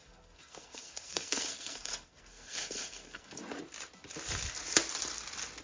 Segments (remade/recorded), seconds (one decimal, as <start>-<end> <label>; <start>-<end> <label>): 0.0-3.4 remade; 3.4-5.6 recorded